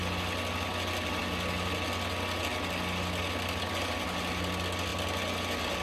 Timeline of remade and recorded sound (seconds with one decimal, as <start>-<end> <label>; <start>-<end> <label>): 0.0-5.8 recorded

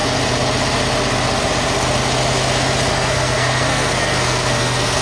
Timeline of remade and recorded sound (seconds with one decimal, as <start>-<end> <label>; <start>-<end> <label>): 0.0-2.9 recorded; 2.9-5.0 remade

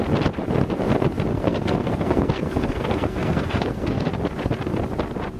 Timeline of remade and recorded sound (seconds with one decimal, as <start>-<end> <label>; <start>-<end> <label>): 0.0-1.3 recorded; 1.3-4.1 remade; 4.1-5.4 recorded

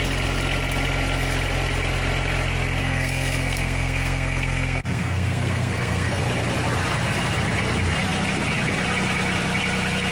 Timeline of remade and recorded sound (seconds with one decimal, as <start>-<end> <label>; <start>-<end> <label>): 0.0-2.8 recorded; 2.8-6.2 remade; 6.2-10.1 recorded

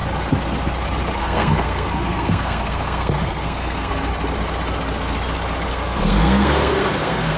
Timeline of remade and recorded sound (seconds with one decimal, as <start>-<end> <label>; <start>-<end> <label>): 0.0-1.2 recorded; 1.2-4.1 remade; 4.1-5.7 recorded; 5.7-7.4 remade

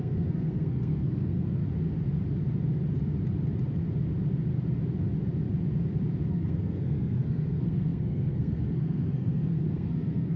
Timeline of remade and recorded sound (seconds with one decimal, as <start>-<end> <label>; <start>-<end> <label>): 0.0-1.6 remade; 1.6-6.3 recorded; 6.3-10.4 remade